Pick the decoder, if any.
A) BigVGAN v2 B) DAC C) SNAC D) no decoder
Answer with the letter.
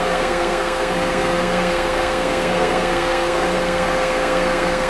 C